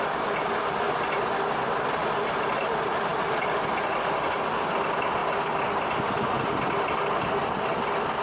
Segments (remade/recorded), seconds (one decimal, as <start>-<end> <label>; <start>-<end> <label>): 0.0-8.2 recorded